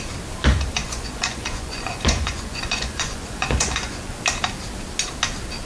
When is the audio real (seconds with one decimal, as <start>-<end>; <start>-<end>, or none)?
0.0-0.8; 4.2-5.7